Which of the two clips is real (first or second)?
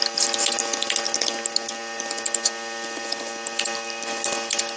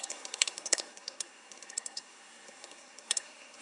first